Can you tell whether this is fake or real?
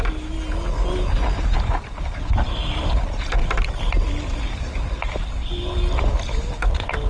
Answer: real